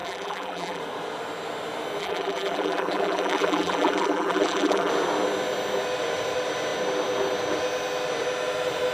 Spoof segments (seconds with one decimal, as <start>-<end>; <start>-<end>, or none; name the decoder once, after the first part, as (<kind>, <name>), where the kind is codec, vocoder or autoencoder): 0.0-0.8 (vocoder, BigVGAN v2); 2.0-4.9